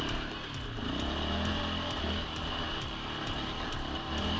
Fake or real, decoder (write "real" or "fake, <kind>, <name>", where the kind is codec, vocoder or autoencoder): real